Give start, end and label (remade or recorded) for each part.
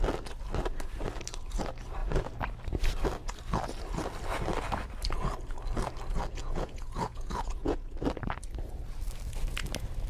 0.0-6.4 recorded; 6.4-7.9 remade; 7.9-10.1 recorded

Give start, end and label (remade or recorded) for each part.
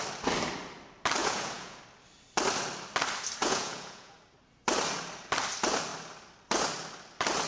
0.0-1.2 recorded; 1.2-1.8 remade; 1.8-3.4 recorded; 3.4-4.1 remade; 4.1-7.5 recorded